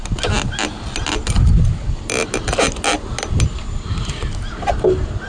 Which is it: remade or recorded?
recorded